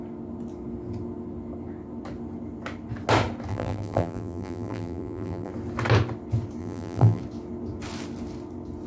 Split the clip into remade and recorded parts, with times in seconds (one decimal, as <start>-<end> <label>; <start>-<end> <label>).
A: 0.0-3.5 recorded; 3.5-5.5 remade; 5.5-6.6 recorded; 6.6-7.2 remade; 7.2-8.9 recorded